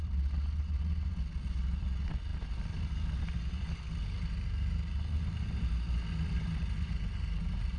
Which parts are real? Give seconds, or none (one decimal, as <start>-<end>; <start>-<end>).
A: 0.0-7.8